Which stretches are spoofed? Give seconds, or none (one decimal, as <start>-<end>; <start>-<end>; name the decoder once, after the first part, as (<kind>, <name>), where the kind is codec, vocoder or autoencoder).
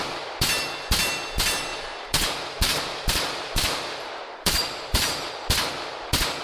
1.7-5.3 (vocoder, BigVGAN v2)